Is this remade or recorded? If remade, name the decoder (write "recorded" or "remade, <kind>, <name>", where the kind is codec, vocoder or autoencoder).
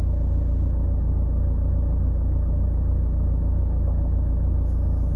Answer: recorded